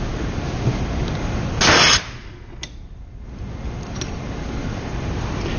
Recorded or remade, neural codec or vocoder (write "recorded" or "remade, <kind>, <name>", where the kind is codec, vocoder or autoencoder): recorded